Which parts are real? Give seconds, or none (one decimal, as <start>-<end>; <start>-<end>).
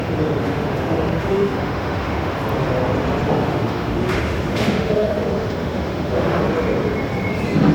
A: 0.0-0.4; 2.3-3.4; 6.4-7.7